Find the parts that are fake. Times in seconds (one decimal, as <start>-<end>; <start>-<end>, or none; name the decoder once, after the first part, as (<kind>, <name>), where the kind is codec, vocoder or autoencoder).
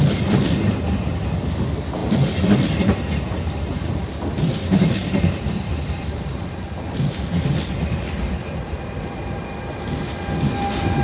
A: 5.0-9.5 (vocoder, BigVGAN v2)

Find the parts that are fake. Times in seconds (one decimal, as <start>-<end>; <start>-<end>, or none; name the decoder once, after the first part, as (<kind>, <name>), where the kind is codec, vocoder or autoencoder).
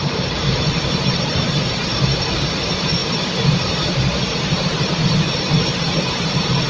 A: 0.0-6.7 (vocoder, BigVGAN v2)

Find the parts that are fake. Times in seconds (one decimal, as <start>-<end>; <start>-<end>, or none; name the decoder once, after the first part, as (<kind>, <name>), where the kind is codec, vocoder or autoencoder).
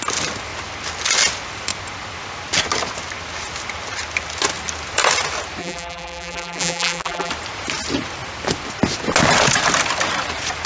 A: 5.6-7.3 (vocoder, BigVGAN v2)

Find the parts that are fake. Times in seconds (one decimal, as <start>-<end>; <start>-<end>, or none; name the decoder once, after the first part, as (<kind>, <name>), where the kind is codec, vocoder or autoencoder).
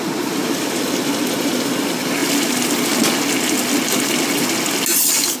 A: none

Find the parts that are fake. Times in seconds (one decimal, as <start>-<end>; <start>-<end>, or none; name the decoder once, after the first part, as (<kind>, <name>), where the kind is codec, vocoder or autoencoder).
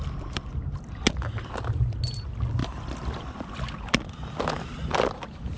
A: 2.6-3.5 (vocoder, BigVGAN v2)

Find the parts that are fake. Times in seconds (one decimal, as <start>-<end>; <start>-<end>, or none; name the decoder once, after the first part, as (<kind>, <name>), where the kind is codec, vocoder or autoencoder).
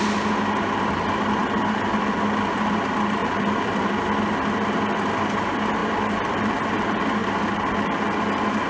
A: 1.4-2.1 (vocoder, BigVGAN v2); 3.2-3.8; 5.8-6.7; 7.2-7.7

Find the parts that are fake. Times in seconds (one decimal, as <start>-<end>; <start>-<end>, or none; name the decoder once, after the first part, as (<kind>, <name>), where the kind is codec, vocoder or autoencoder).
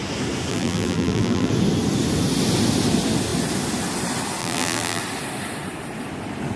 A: 0.5-1.5 (vocoder, BigVGAN v2); 4.4-5.0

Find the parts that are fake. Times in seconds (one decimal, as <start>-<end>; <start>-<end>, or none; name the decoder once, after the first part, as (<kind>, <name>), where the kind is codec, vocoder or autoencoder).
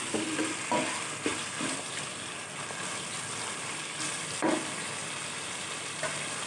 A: 1.3-2.4 (vocoder, BigVGAN v2); 3.1-4.5; 5.0-6.1